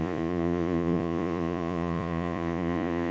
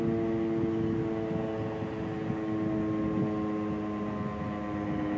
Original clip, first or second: second